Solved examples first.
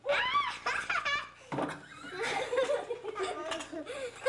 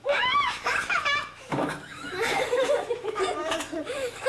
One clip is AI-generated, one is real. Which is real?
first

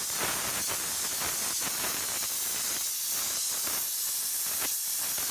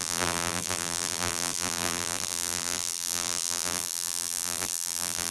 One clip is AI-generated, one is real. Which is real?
first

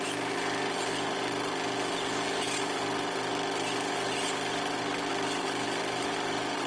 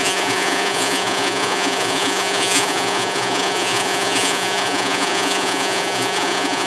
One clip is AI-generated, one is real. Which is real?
first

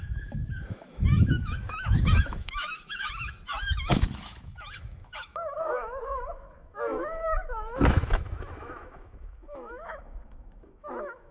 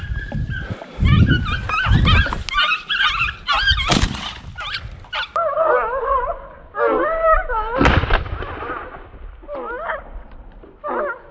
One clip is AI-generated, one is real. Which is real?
second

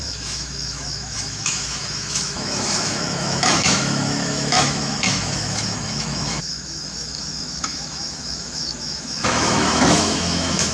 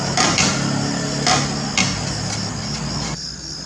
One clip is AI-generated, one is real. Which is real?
second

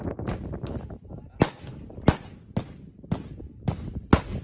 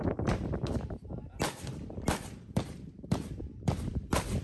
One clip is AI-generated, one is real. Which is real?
first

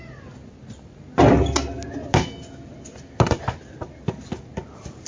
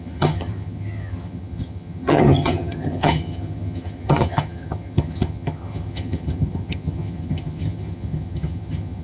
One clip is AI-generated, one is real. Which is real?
first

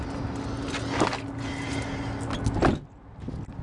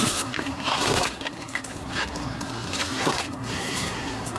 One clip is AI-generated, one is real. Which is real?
first